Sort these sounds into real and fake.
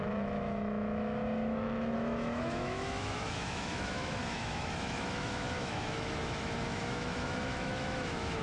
fake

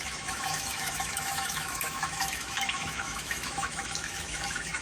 fake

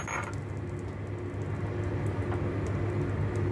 real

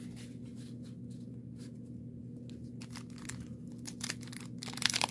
real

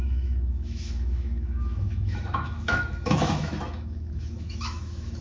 fake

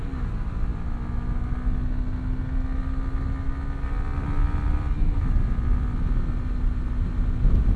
real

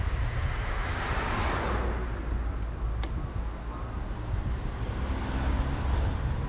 real